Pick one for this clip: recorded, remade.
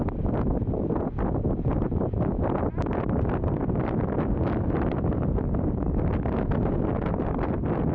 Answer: recorded